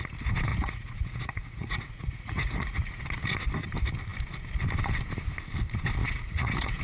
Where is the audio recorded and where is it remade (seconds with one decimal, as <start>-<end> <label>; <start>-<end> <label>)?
0.0-0.5 recorded; 0.5-2.9 remade; 2.9-6.0 recorded; 6.0-6.8 remade

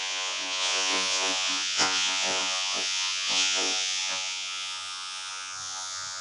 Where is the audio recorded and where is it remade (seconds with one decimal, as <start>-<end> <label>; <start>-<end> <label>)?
0.0-6.2 remade

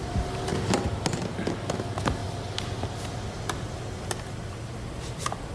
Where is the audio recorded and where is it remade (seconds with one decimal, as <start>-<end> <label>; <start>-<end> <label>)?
0.0-5.5 recorded

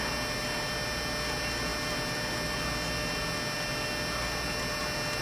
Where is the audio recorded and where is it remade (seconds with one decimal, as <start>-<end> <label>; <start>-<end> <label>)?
0.0-5.2 recorded

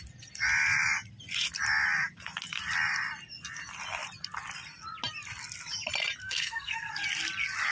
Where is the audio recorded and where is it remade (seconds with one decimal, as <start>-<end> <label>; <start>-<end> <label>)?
0.0-6.2 recorded; 6.2-6.9 remade; 6.9-7.7 recorded

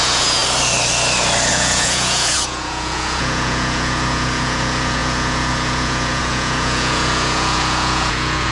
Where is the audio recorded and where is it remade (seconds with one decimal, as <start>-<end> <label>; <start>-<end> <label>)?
0.0-0.4 remade; 0.4-1.5 recorded; 1.5-8.5 remade